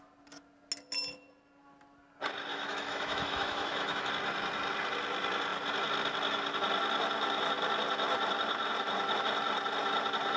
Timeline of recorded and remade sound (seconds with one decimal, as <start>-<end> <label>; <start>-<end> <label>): 0.0-2.5 recorded; 2.5-4.1 remade; 4.1-10.4 recorded